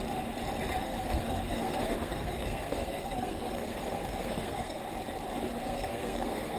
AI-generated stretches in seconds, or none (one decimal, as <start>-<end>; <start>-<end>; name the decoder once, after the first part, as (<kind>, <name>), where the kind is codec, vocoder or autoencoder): 0.8-4.8 (codec, SNAC); 5.6-6.6